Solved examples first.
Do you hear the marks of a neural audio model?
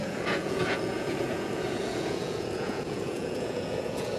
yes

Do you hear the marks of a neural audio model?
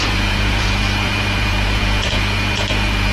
yes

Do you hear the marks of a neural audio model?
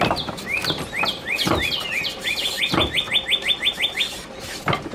no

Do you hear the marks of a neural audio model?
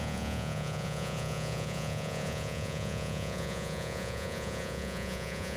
yes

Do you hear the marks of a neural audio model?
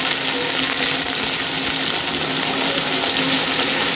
no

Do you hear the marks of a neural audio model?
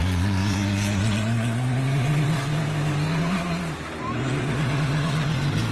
no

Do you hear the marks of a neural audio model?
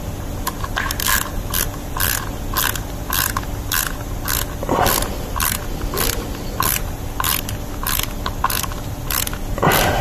no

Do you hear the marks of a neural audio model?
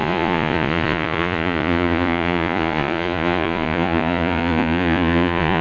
yes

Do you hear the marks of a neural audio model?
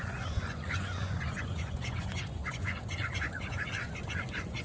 yes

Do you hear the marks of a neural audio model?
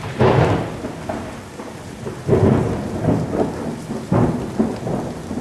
no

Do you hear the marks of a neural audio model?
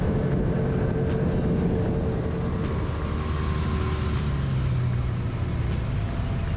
no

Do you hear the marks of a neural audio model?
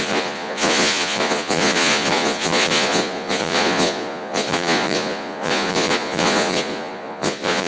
yes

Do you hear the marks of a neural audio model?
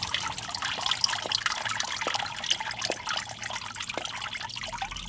no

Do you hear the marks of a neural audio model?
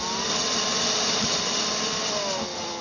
no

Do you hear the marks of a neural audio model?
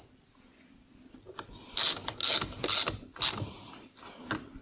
no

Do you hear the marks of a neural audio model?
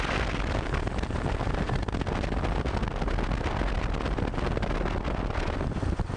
no